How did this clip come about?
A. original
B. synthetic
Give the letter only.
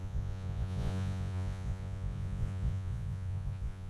B